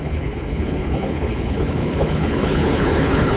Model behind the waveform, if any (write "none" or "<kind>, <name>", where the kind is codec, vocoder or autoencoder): codec, HILCodec